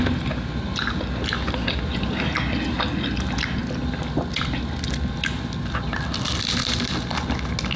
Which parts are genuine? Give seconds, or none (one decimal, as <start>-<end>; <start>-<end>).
0.0-7.8